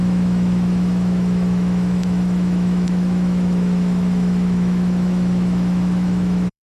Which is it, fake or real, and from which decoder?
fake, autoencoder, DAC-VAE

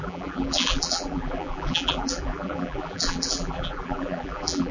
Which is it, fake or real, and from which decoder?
fake, vocoder, BigVGAN v2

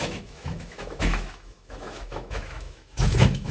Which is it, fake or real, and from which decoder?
fake, autoencoder, DAC-VAE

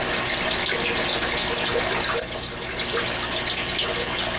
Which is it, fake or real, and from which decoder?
real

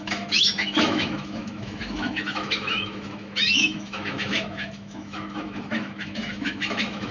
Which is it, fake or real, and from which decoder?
fake, autoencoder, DAC-VAE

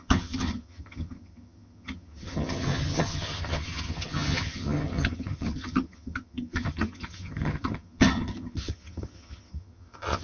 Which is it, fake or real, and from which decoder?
fake, vocoder, HiFi-GAN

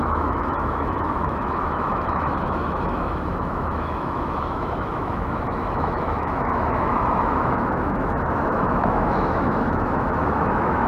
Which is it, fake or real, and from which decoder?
fake, autoencoder, DAC-VAE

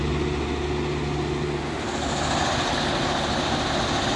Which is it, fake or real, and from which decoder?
real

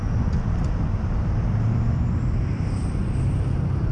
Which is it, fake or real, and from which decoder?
fake, vocoder, BigVGAN v2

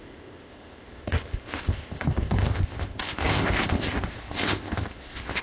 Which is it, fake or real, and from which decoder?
fake, codec, ZipCodec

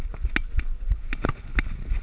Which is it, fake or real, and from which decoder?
real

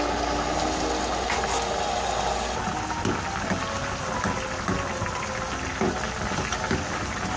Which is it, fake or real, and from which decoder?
real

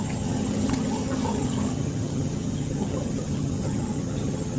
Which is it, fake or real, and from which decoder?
fake, vocoder, HiFi-GAN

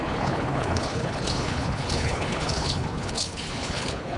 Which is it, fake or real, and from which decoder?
fake, codec, HILCodec